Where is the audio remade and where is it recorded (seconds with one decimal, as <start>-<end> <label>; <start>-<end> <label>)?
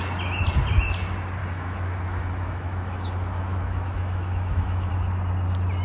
0.0-1.4 recorded; 1.4-4.9 remade; 4.9-5.8 recorded